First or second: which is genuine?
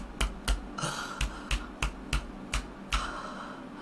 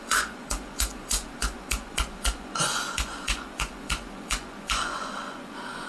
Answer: first